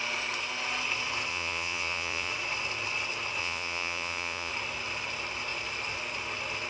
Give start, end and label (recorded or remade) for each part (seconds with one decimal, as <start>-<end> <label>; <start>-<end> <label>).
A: 0.0-1.3 recorded; 1.3-2.3 remade; 2.3-3.4 recorded; 3.4-4.5 remade; 4.5-6.7 recorded